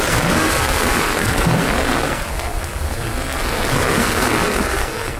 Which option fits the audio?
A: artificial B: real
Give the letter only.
A